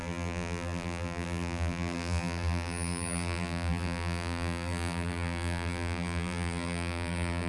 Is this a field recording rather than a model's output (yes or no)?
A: no